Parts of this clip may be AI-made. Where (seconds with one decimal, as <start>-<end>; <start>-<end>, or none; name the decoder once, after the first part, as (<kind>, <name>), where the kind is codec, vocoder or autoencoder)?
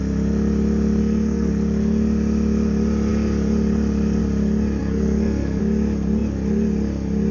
1.0-1.5 (codec, SNAC); 4.8-5.6